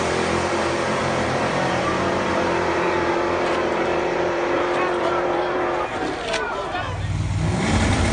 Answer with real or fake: fake